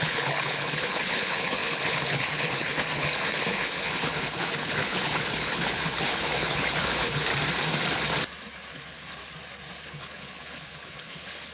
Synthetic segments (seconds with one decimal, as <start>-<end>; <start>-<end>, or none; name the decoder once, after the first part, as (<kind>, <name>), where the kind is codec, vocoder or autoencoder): 0.0-7.3 (codec, HILCodec); 8.7-9.2; 9.9-11.5